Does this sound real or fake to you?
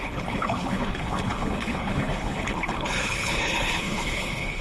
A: fake